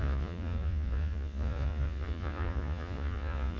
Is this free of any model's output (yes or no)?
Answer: no